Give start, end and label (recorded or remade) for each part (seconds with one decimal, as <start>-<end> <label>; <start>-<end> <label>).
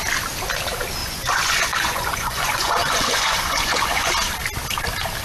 0.0-1.0 recorded; 1.0-4.1 remade; 4.1-5.2 recorded